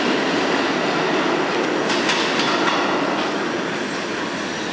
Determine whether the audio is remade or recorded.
recorded